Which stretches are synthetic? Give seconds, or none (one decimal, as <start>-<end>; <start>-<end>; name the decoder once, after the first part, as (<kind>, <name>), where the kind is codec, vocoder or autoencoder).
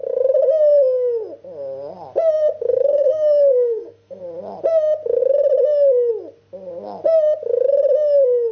2.7-4.2 (codec, SNAC)